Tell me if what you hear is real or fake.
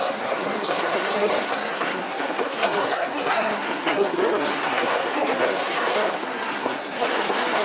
fake